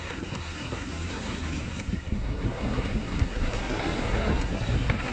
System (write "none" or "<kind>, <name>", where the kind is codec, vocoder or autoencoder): codec, SNAC